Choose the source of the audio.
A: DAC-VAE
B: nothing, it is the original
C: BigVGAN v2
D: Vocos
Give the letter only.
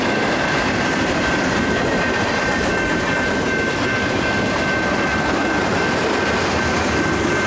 C